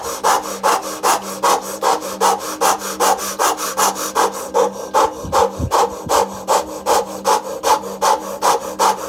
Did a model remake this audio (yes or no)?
no